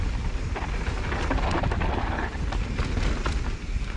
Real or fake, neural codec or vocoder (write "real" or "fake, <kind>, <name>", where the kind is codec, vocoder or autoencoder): real